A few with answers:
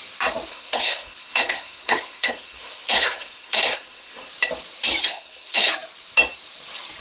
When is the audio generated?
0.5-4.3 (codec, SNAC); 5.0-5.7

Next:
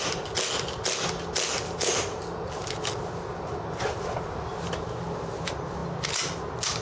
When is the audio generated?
none

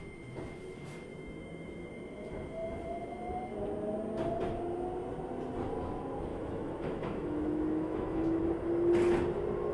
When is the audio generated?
1.1-1.9 (autoencoder, DAC-VAE); 6.3-8.4